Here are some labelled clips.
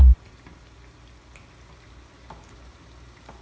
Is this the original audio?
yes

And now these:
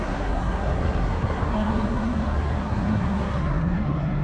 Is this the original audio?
no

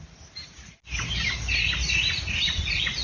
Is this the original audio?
yes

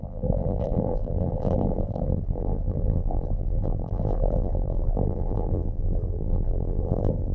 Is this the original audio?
no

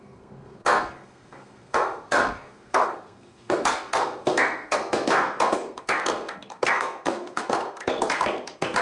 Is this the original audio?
no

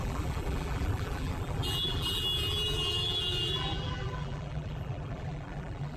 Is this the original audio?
no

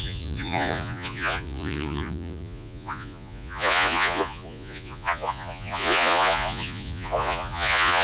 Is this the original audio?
no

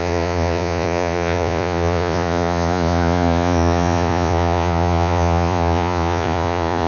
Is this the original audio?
no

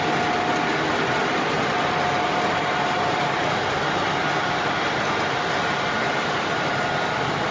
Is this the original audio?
yes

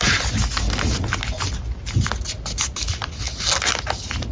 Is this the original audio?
yes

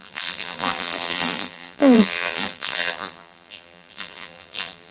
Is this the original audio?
no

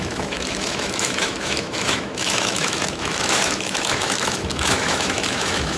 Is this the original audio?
no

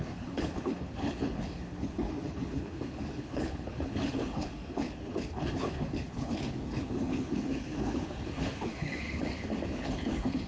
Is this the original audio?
no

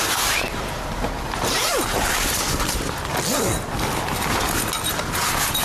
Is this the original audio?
yes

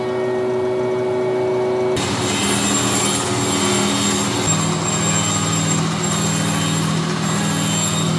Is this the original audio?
yes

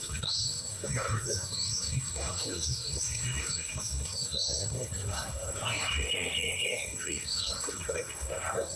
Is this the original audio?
no